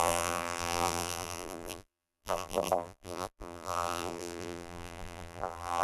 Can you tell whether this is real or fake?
fake